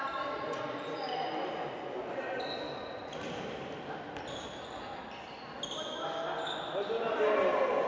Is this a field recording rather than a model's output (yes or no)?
yes